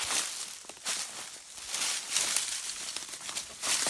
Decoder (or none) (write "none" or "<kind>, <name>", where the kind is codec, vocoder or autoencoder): none